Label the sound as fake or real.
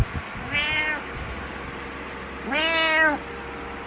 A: real